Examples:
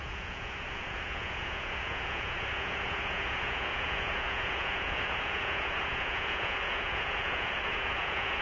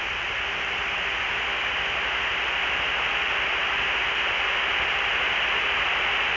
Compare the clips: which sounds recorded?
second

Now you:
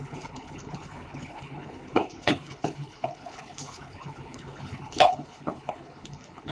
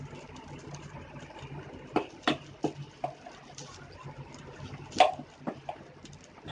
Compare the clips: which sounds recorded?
second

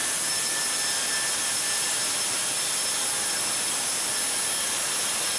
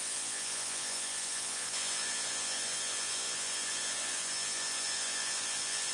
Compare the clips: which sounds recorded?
first